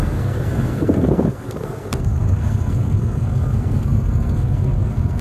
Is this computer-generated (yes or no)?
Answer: yes